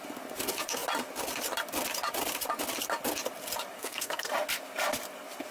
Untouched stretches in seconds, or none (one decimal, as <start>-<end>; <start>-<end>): 0.0-3.8; 4.3-5.5